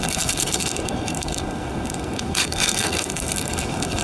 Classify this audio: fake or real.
fake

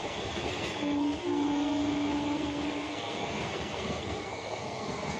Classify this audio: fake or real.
fake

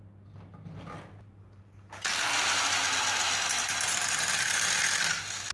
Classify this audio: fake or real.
real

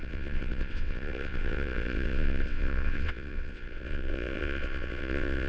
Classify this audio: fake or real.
fake